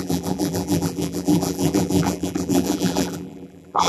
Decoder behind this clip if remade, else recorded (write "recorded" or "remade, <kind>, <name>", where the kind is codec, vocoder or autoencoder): remade, vocoder, BigVGAN v2